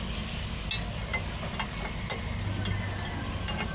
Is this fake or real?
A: real